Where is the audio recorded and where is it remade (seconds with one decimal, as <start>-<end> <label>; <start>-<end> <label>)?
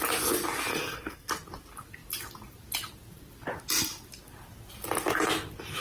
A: 0.0-0.7 recorded; 0.7-1.3 remade; 1.3-5.8 recorded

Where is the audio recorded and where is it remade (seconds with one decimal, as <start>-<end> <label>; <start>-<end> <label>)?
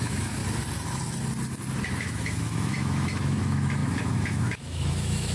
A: 0.0-0.4 remade; 0.4-1.9 recorded; 1.9-5.3 remade